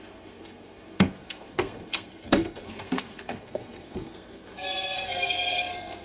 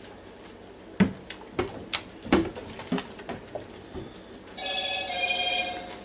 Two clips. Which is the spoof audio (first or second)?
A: first